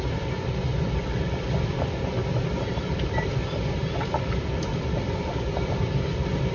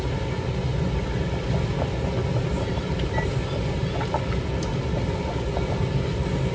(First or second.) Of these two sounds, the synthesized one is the first